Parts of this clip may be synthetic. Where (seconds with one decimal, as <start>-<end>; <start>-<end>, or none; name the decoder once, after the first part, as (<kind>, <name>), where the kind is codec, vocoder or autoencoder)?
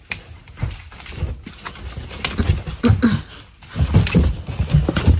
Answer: none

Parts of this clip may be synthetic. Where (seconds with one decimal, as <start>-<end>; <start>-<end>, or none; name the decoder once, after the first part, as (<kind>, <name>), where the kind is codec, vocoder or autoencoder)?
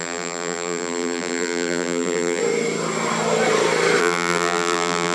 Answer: 0.0-2.4 (vocoder, BigVGAN v2); 4.0-5.1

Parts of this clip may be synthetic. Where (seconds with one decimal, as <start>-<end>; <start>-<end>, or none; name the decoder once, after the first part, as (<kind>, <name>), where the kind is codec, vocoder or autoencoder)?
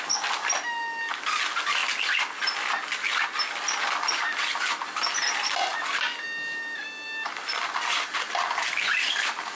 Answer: none